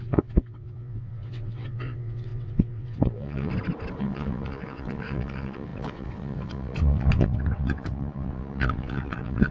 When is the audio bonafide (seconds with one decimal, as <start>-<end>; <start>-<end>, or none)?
3.5-4.0